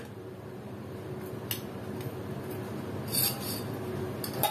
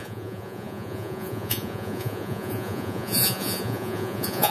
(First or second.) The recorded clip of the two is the first